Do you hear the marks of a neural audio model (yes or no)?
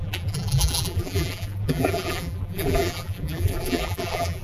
yes